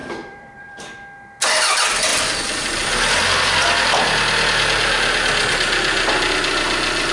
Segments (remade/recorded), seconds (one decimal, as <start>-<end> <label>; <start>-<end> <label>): 0.0-0.8 remade; 0.8-7.1 recorded